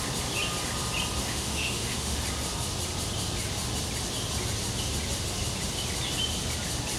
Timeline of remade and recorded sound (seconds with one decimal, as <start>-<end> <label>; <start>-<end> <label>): 0.0-1.2 recorded; 1.2-2.2 remade; 2.2-7.0 recorded